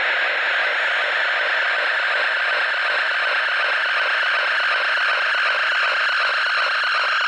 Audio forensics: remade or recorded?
recorded